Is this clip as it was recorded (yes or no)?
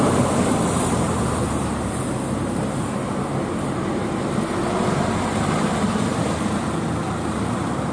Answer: no